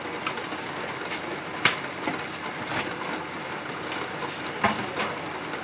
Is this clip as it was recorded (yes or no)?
yes